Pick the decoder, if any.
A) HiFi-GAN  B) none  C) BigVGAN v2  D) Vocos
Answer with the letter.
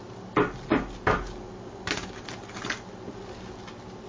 B